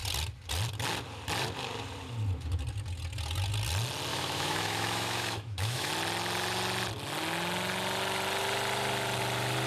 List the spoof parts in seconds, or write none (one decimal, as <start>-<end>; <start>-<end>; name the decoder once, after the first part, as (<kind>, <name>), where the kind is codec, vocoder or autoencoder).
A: 4.1-5.9 (autoencoder, DAC-VAE)